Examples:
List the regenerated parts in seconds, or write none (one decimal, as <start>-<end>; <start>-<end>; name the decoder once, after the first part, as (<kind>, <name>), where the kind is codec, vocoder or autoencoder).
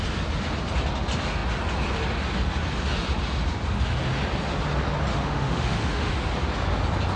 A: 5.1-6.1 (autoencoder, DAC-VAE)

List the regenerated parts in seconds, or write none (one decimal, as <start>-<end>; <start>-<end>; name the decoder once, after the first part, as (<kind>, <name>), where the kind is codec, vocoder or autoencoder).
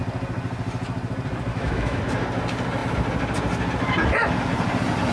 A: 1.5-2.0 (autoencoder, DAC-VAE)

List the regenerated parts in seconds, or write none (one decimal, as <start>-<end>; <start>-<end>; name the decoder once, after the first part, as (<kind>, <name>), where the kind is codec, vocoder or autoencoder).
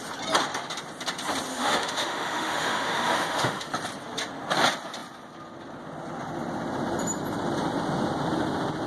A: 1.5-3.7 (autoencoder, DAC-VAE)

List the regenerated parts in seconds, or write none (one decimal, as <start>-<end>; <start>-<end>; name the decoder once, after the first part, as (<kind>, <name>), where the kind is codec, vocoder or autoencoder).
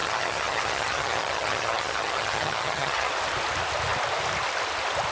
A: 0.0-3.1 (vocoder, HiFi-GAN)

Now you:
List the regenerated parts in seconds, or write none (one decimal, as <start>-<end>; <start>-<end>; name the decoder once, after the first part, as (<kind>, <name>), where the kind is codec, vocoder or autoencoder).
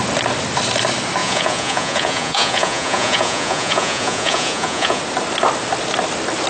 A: 1.2-5.0 (vocoder, Vocos)